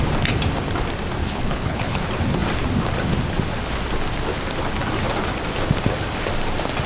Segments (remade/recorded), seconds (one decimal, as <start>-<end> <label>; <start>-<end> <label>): 0.0-1.2 recorded; 1.2-2.0 remade; 2.0-6.9 recorded